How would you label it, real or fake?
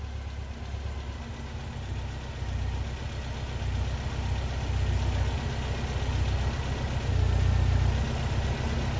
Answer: real